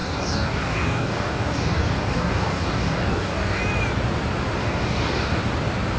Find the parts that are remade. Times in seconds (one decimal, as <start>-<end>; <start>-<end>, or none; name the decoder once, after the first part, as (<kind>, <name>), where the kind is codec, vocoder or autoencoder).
0.0-3.6 (codec, DAC); 4.6-5.4